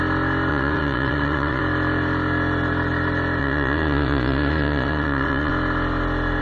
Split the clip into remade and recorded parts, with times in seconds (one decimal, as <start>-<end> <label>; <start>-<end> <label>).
0.0-0.5 recorded; 0.5-1.6 remade; 1.6-3.4 recorded; 3.4-5.5 remade; 5.5-6.4 recorded